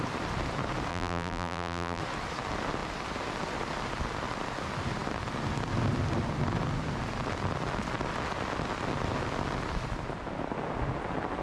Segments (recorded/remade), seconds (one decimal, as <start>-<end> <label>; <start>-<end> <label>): 0.0-0.9 recorded; 0.9-2.0 remade; 2.0-11.4 recorded